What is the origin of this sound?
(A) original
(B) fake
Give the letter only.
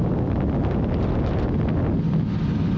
A